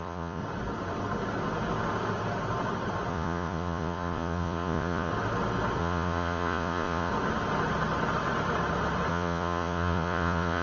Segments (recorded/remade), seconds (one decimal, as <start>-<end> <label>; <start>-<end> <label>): 0.0-0.4 remade; 0.4-3.1 recorded; 3.1-5.1 remade; 5.1-5.8 recorded; 5.8-7.1 remade; 7.1-9.1 recorded; 9.1-10.6 remade